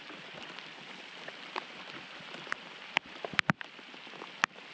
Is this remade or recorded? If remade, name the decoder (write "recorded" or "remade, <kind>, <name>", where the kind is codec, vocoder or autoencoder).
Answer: recorded